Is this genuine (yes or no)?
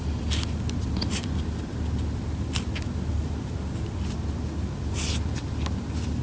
yes